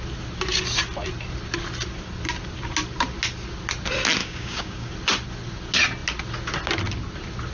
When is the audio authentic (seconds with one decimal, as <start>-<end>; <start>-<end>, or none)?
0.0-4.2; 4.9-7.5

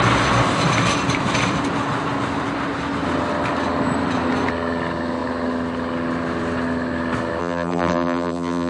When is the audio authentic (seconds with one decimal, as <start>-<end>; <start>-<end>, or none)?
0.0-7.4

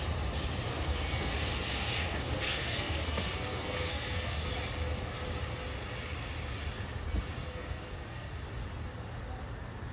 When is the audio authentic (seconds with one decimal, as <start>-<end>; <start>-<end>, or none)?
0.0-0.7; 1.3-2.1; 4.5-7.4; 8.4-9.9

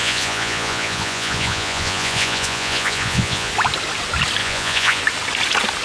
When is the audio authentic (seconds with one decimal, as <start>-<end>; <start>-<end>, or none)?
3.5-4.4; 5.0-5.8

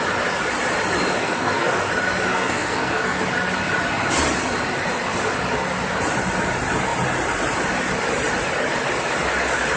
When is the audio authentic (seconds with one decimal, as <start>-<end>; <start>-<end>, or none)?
0.0-1.2; 1.9-2.3; 3.2-9.8

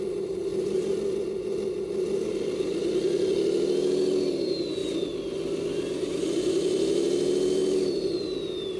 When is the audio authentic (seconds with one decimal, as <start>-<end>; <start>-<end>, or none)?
0.0-8.8